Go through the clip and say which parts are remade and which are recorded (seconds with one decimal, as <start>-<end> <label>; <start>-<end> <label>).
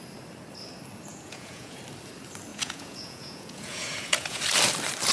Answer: 0.0-1.1 recorded; 1.1-1.8 remade; 1.8-2.5 recorded; 2.5-4.4 remade; 4.4-5.1 recorded